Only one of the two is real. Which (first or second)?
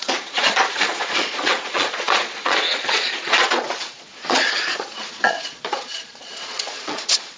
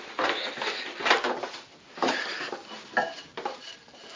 second